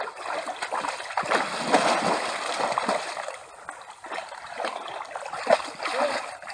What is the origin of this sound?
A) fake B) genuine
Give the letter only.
B